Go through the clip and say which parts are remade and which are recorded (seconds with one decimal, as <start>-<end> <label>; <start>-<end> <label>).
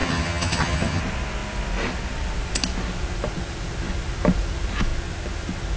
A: 0.0-1.0 remade; 1.0-5.8 recorded